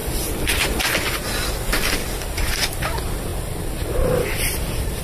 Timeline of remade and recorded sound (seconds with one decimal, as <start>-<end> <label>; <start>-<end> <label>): 0.0-0.8 remade; 0.8-2.0 recorded; 2.0-2.8 remade; 2.8-3.3 recorded; 3.3-5.0 remade